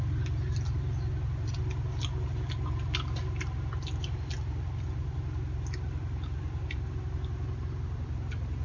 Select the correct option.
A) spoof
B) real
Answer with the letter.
B